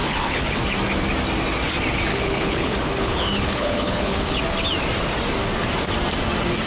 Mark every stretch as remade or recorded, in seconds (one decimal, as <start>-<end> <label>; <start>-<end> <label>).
0.0-0.6 remade; 0.6-2.1 recorded; 2.1-4.4 remade; 4.4-6.7 recorded